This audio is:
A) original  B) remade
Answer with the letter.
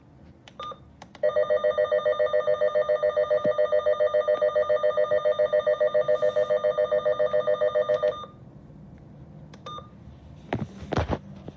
A